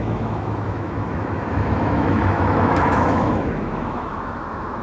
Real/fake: fake